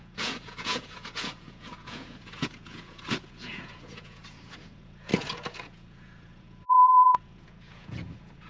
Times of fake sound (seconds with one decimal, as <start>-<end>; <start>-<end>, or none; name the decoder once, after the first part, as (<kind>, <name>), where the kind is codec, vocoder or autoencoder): 0.0-8.5 (vocoder, Vocos)

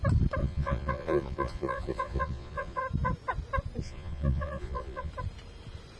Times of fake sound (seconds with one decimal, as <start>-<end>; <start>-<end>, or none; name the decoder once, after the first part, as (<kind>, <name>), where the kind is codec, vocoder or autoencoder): 0.4-2.8 (vocoder, Vocos); 3.8-5.1